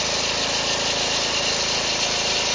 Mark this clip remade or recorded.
recorded